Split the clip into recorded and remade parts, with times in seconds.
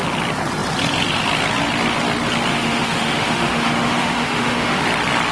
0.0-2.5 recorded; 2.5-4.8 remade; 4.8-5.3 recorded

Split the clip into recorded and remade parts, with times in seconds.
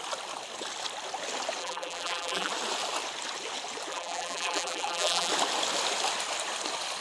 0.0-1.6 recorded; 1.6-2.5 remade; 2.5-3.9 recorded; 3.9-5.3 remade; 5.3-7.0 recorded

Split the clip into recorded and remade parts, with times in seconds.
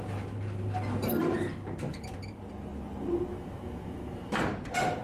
0.0-3.3 recorded; 3.3-4.3 remade; 4.3-5.0 recorded